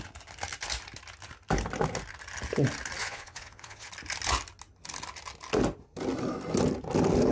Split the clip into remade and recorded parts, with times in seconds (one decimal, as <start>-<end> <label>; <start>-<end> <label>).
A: 0.0-3.0 recorded; 3.0-3.9 remade; 3.9-7.3 recorded